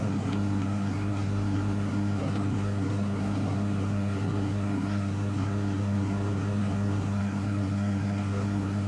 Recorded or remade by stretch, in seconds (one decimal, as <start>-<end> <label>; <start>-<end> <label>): 0.0-8.9 remade